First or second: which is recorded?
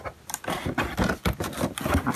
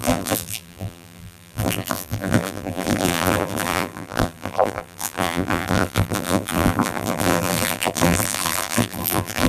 first